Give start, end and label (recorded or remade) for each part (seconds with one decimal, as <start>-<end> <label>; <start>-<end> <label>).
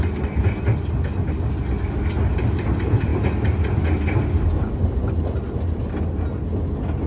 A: 0.0-7.1 recorded